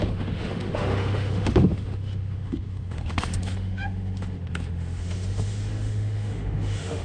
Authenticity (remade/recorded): remade